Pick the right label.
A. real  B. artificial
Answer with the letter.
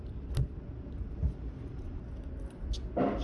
A